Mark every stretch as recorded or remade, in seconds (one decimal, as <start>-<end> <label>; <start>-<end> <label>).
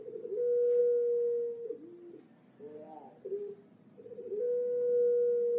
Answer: 0.0-5.6 recorded